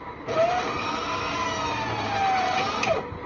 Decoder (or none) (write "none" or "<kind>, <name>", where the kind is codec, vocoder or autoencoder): none